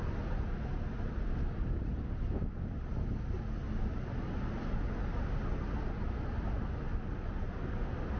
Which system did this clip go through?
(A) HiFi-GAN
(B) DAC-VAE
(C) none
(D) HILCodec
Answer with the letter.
C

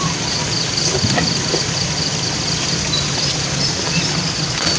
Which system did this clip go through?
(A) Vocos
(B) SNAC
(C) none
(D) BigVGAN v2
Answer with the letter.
C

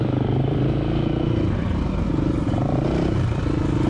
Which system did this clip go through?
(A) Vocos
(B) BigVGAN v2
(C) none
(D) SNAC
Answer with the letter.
C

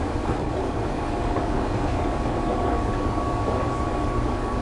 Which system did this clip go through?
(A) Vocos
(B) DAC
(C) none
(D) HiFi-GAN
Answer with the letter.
B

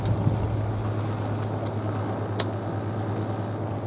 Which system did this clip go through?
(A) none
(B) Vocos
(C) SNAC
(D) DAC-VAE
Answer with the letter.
A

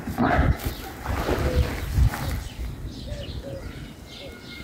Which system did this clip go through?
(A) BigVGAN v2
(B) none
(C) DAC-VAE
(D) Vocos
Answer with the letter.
B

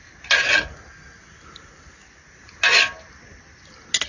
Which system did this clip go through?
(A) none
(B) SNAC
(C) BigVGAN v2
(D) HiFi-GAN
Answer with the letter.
A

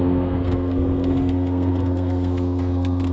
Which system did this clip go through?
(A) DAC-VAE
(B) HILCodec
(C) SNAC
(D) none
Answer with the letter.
C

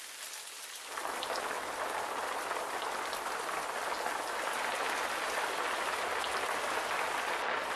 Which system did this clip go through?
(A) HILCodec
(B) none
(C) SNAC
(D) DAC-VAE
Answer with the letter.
B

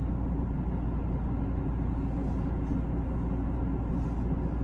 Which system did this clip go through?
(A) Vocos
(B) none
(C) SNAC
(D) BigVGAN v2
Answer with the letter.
B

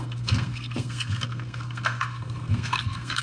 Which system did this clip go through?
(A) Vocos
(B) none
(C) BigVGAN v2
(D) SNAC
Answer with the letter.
D